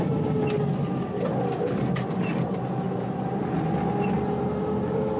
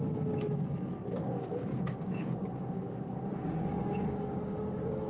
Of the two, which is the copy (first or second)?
second